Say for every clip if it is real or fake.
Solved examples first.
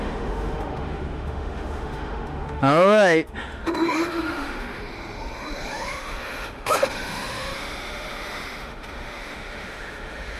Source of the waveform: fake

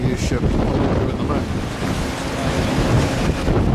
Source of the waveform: real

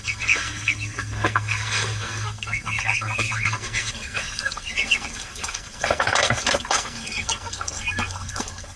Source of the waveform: fake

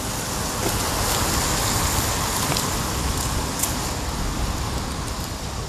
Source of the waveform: real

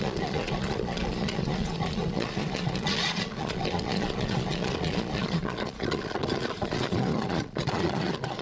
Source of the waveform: fake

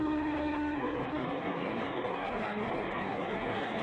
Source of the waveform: fake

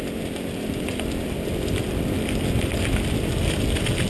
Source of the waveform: real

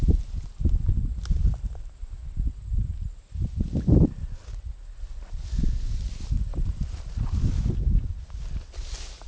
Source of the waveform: real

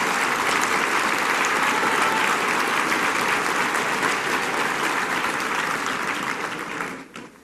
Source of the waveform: real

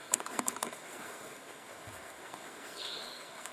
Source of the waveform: fake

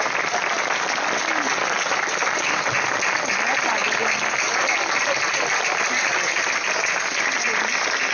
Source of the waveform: real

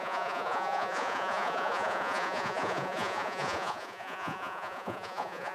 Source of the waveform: fake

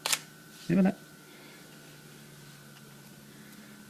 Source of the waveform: real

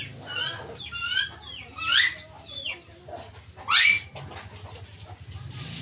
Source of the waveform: real